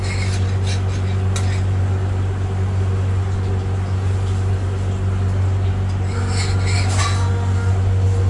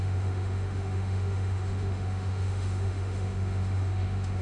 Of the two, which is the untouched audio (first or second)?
first